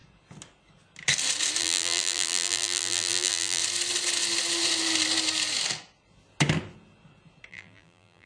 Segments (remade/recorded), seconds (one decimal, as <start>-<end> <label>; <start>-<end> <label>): 0.0-1.6 recorded; 1.6-3.6 remade; 3.6-7.5 recorded; 7.5-8.3 remade